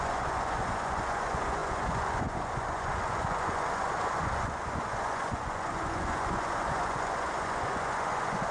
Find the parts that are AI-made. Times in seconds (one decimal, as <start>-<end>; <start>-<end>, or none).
0.0-8.5